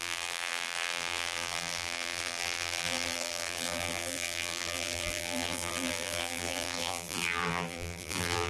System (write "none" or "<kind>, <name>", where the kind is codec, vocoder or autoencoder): vocoder, BigVGAN v2